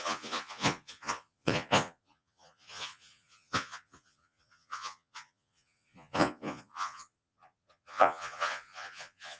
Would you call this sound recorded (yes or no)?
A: no